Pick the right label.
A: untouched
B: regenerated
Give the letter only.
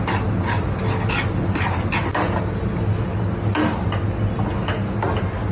A